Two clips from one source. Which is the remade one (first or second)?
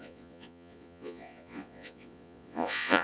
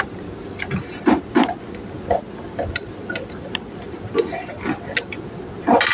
first